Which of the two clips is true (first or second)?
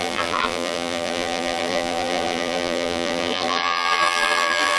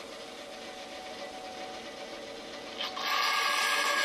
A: second